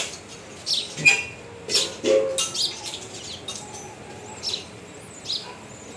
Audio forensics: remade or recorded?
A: recorded